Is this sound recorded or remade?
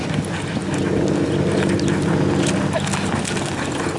recorded